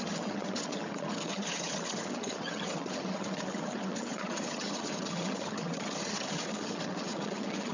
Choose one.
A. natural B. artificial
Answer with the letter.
B